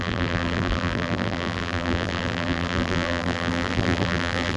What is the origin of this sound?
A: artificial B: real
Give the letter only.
A